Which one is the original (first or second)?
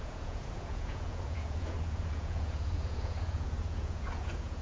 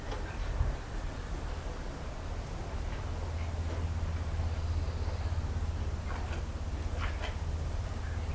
second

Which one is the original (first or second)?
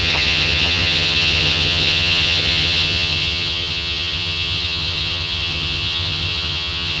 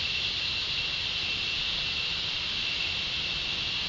second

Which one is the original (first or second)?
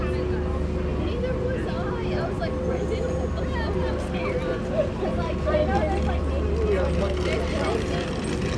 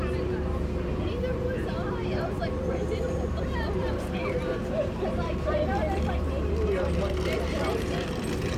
first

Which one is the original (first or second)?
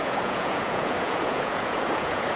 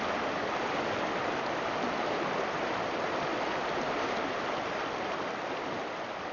second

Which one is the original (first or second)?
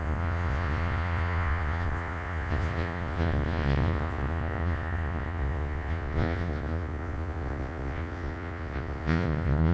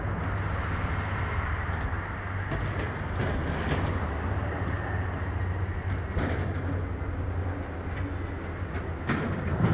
second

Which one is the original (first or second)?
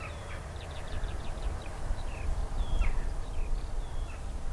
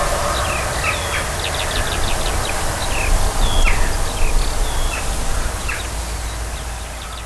second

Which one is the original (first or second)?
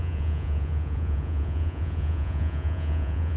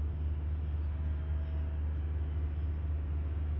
second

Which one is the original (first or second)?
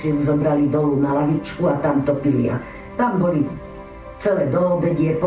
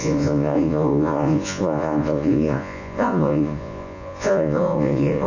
first